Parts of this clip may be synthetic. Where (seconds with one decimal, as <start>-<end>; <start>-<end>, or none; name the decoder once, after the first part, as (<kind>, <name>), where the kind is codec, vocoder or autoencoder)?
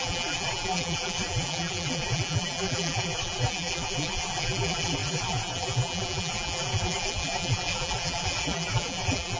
0.0-9.4 (vocoder, BigVGAN v2)